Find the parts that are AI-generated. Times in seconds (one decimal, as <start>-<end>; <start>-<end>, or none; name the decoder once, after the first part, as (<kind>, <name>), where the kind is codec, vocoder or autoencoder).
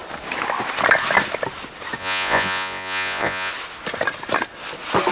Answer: 2.0-3.5 (vocoder, Vocos)